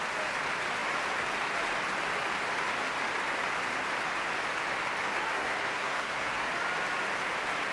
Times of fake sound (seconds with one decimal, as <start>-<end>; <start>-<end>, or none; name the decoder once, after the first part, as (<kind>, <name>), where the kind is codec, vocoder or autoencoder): 5.3-6.5 (codec, SNAC)

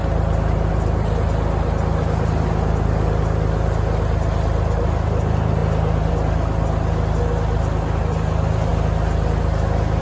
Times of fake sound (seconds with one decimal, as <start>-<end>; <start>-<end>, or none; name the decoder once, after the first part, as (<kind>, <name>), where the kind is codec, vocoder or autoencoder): none

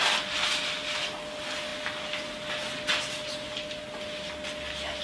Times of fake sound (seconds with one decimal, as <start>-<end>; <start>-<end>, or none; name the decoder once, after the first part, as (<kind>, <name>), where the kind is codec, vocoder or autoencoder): none

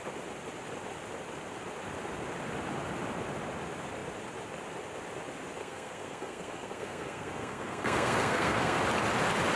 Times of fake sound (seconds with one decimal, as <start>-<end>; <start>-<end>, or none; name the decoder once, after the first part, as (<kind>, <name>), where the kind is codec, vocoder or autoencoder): 5.6-8.8 (codec, SNAC)

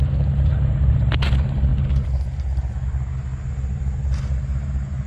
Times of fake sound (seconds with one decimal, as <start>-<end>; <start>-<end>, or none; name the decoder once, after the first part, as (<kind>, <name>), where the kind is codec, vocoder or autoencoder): none

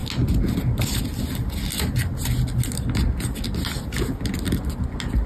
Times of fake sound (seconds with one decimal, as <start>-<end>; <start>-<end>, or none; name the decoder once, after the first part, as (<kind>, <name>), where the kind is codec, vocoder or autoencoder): none

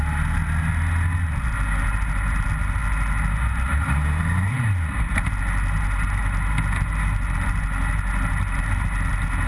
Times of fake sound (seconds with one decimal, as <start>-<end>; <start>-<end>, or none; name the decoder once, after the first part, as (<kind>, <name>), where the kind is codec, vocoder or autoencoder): none